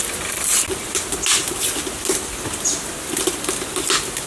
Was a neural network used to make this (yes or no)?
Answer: no